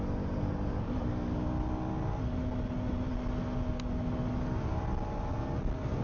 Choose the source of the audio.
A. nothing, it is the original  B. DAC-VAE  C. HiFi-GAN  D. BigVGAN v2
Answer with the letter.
A